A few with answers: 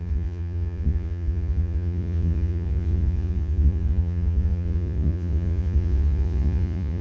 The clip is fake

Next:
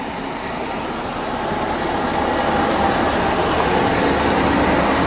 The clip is real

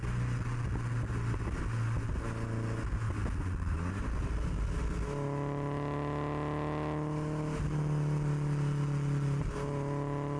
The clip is real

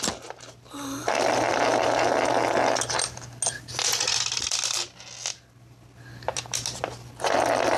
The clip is real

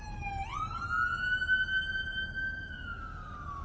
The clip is real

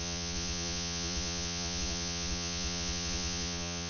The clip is fake